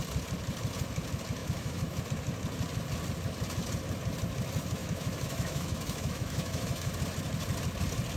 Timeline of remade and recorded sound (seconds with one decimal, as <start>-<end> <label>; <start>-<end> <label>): 0.0-1.4 recorded; 1.4-2.0 remade; 2.0-4.8 recorded; 4.8-6.9 remade; 6.9-8.2 recorded